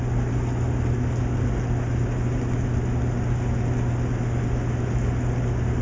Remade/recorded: recorded